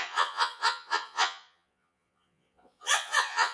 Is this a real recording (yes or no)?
no